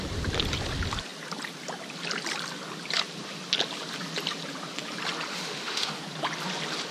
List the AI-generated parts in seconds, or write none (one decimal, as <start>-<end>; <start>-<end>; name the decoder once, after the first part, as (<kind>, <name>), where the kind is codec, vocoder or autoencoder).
5.3-6.0 (autoencoder, DAC-VAE)